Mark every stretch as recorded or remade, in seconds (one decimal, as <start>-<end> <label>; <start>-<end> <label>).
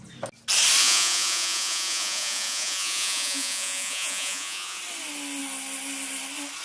0.0-0.8 recorded; 0.8-4.8 remade; 4.8-6.6 recorded